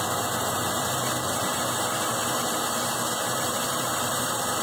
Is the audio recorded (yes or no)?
yes